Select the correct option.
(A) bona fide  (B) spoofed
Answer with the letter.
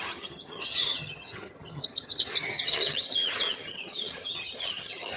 B